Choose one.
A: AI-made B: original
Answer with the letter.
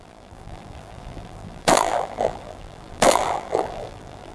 A